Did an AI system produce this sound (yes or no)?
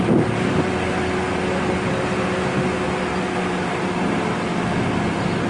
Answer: no